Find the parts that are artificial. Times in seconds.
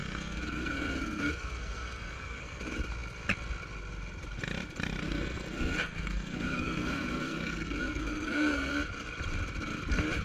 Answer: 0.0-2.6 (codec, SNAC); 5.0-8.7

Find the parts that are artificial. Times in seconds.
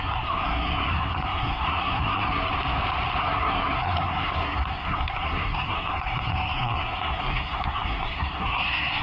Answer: 0.0-2.5 (codec, SNAC); 3.2-9.0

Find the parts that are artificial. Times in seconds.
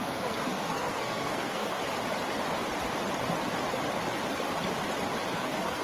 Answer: 0.0-1.8 (codec, SNAC); 5.3-5.8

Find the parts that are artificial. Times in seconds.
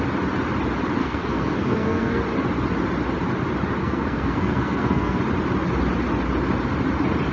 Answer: 1.0-2.2 (codec, SNAC); 3.8-5.2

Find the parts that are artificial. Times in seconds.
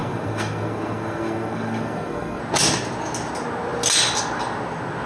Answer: 0.0-2.4 (codec, SNAC)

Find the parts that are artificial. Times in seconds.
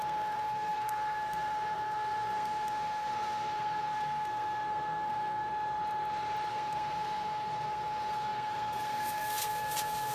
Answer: 0.0-5.5 (codec, SNAC); 6.5-10.1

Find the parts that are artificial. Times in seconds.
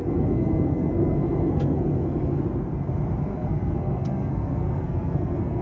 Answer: 0.0-2.4 (codec, SNAC); 3.3-5.6